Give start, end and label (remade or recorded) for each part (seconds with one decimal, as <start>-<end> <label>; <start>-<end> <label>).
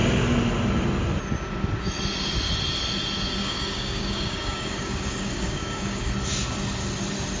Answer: 0.0-3.4 recorded; 3.4-6.1 remade; 6.1-7.4 recorded